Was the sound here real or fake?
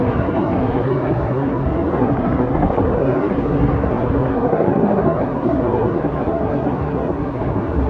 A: fake